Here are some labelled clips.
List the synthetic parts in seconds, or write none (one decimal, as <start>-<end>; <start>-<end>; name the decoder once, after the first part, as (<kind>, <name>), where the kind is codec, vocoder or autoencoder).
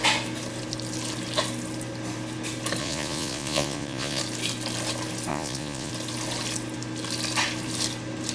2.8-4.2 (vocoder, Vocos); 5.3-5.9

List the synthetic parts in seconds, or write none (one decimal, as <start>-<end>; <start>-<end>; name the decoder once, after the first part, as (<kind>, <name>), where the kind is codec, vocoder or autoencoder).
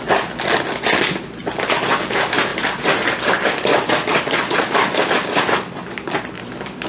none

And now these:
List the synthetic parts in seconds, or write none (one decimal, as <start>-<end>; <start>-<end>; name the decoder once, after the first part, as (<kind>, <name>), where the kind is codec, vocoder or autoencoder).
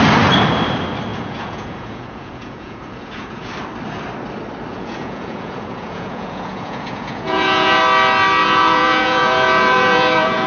1.1-3.5 (vocoder, Vocos); 4.7-7.8; 8.4-10.5